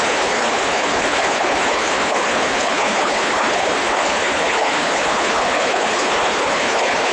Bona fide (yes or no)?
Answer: no